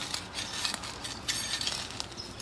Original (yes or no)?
yes